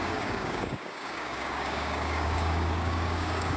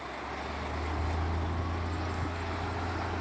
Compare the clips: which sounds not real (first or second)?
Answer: first